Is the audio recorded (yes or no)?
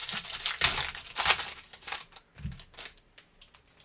yes